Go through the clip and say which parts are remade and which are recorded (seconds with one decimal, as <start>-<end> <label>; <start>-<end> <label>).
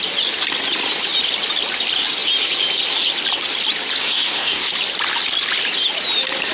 0.0-4.0 recorded; 4.0-4.7 remade; 4.7-6.5 recorded